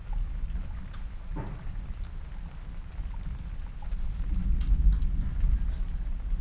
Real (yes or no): yes